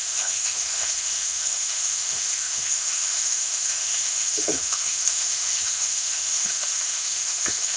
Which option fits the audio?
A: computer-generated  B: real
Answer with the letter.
A